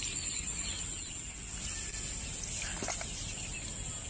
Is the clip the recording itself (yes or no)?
yes